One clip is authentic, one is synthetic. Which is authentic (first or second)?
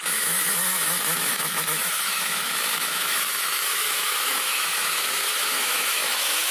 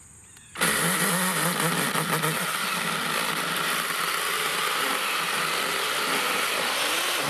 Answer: second